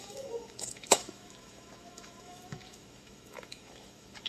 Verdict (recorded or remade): remade